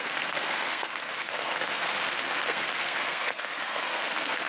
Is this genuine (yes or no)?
no